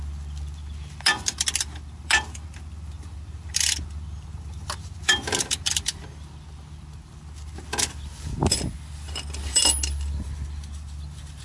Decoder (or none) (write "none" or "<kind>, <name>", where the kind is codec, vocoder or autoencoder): vocoder, BigVGAN v2